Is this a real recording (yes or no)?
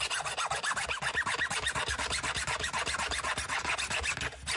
yes